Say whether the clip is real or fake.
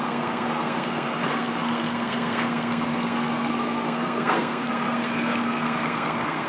fake